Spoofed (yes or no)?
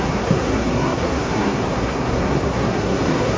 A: yes